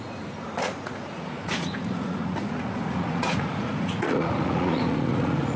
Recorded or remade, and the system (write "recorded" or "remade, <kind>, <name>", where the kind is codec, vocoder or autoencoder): remade, vocoder, Vocos